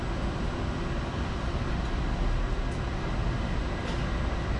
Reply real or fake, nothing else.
real